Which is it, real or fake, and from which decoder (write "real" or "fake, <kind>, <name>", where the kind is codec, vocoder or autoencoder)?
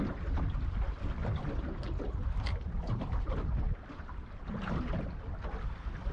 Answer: real